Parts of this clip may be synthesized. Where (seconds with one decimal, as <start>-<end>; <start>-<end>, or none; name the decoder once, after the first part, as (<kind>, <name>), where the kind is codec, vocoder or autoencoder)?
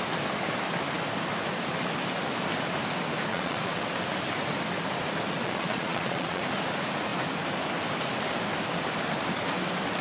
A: 3.3-3.8 (vocoder, Vocos); 5.4-6.4